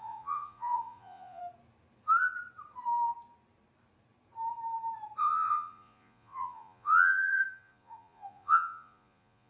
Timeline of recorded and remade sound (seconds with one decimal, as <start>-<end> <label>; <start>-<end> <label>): 0.0-1.4 remade; 1.4-5.2 recorded; 5.2-9.5 remade